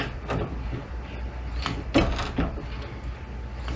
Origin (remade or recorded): recorded